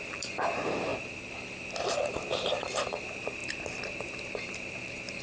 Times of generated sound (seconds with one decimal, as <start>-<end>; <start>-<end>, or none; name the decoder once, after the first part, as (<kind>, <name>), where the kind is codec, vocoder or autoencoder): 0.0-0.9 (vocoder, BigVGAN v2); 1.9-3.4; 4.4-5.2